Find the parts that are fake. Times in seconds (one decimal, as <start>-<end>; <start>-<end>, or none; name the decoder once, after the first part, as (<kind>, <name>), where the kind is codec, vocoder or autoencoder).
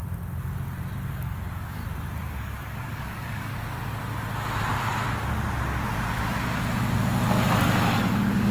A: 1.1-1.8 (codec, DAC); 2.4-3.5; 8.0-8.5